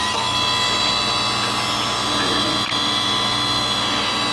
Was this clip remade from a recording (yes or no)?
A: no